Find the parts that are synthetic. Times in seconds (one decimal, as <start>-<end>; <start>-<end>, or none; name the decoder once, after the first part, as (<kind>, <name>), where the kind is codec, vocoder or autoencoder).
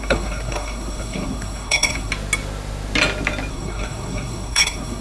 0.0-2.1 (codec, SNAC); 3.5-5.0